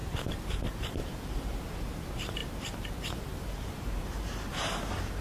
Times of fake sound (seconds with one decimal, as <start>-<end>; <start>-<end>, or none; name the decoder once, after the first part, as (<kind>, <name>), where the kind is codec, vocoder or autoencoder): 0.0-5.2 (vocoder, BigVGAN v2)